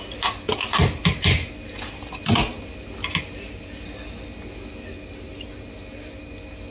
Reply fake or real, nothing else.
real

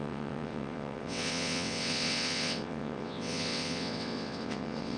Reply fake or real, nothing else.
fake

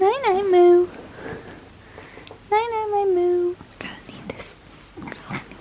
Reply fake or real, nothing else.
real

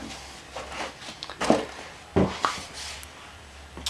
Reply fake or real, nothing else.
real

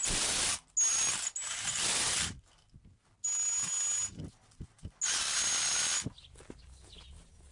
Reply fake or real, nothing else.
real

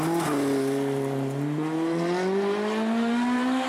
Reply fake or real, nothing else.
real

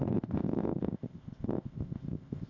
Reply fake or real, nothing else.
fake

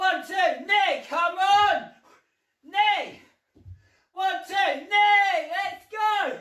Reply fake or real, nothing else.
real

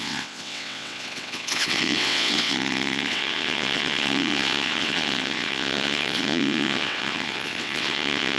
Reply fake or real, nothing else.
fake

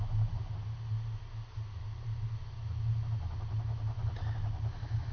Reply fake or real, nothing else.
real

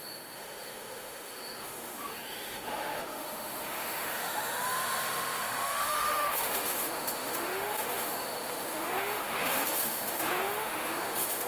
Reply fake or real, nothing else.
fake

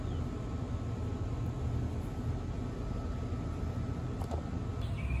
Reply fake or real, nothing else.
real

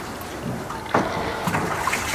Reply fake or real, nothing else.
real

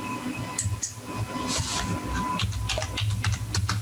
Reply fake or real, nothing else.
real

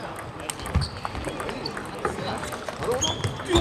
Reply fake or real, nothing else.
real